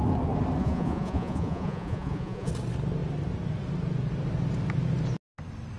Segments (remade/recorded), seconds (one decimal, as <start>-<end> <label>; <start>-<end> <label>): 0.0-0.6 recorded; 0.6-2.5 remade; 2.5-5.8 recorded